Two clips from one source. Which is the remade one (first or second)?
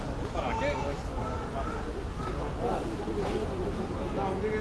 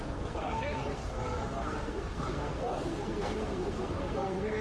second